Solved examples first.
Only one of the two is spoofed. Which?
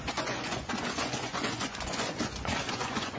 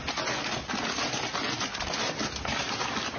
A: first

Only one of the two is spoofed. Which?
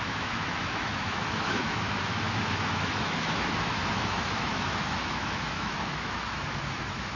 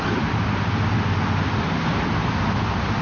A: first